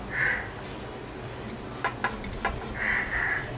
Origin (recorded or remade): recorded